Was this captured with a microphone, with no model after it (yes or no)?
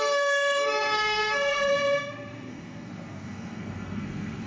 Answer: no